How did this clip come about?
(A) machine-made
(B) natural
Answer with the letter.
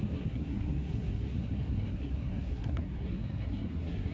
A